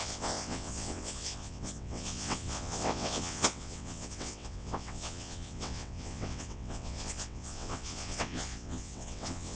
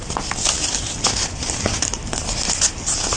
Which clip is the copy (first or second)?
first